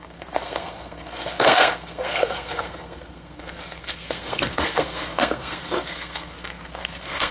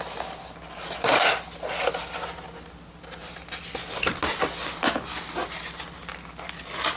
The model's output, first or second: first